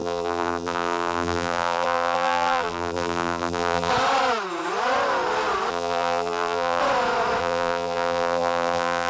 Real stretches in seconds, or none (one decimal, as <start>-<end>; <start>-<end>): 3.9-5.7; 6.8-7.4